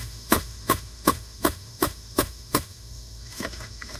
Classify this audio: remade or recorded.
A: remade